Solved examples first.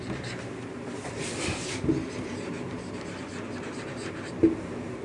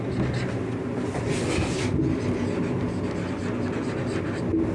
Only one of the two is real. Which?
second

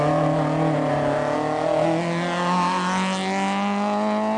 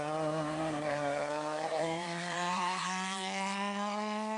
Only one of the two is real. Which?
first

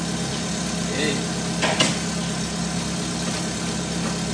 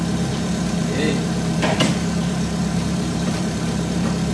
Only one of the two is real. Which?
first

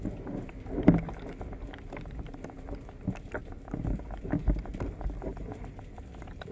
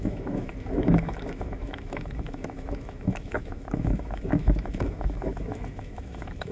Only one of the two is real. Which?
first